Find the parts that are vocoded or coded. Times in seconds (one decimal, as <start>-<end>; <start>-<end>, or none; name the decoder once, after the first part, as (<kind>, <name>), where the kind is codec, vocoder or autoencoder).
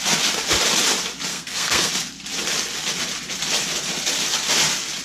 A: 1.3-1.9 (codec, SNAC)